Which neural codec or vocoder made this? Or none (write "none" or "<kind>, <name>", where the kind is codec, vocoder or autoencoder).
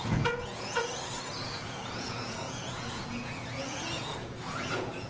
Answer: vocoder, Vocos